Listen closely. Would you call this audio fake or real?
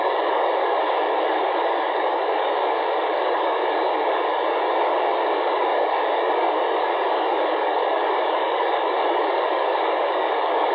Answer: fake